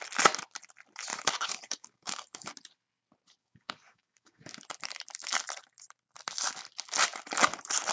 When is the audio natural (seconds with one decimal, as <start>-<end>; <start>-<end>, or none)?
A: 0.0-1.1; 2.5-3.4; 4.5-7.9